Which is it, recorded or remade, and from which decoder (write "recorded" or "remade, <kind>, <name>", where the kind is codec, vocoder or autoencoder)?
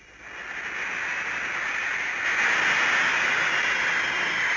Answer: recorded